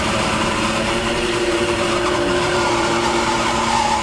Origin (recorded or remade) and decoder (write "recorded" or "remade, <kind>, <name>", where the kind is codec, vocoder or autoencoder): remade, vocoder, BigVGAN v2